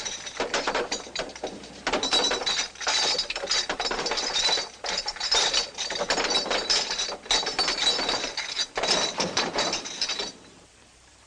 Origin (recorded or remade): remade